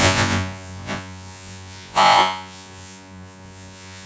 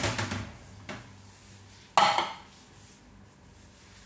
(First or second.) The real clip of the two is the second